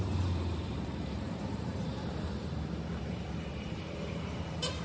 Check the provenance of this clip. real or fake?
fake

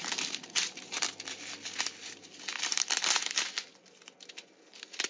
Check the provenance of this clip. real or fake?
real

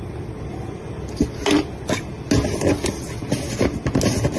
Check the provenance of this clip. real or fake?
real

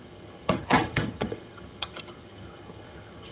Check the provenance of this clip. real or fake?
fake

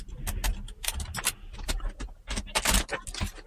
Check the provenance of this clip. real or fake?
real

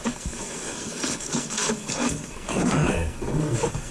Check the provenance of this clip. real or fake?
fake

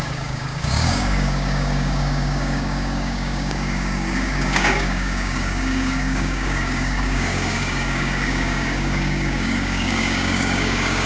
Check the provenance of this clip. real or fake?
fake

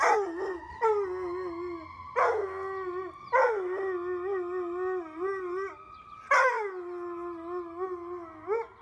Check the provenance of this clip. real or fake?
real